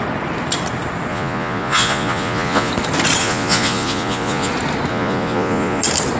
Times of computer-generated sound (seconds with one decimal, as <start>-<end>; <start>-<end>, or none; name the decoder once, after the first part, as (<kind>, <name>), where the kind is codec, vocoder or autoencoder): 1.1-2.7 (vocoder, Vocos); 3.2-4.5; 4.9-5.8